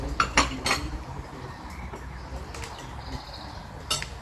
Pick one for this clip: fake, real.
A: real